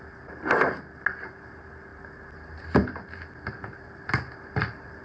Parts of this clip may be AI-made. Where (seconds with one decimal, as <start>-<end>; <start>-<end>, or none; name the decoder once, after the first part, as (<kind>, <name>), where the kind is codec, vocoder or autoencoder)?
none